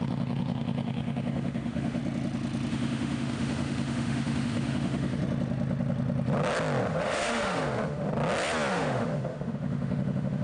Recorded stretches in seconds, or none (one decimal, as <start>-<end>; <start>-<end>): 2.0-2.7; 5.2-6.9; 8.1-8.7